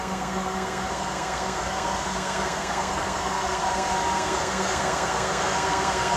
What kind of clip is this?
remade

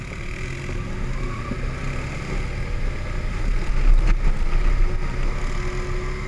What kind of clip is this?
recorded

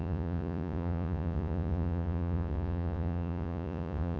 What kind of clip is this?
remade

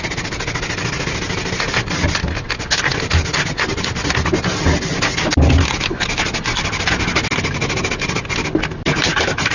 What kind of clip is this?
recorded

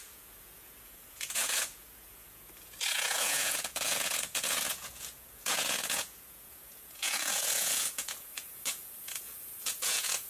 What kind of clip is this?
remade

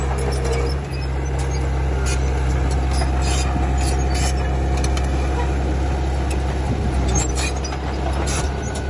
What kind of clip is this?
recorded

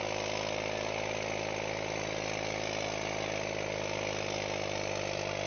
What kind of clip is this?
recorded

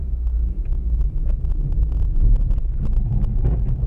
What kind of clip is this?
recorded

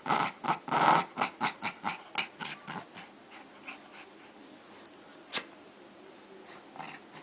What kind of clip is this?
recorded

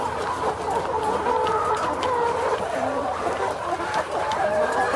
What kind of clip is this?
recorded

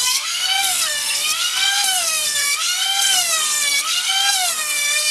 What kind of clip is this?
remade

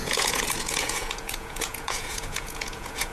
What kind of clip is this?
remade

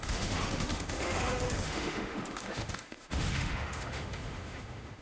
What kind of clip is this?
remade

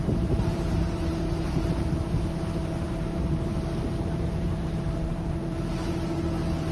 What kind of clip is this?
remade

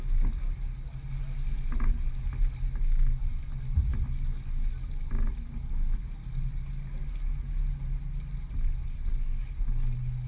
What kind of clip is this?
recorded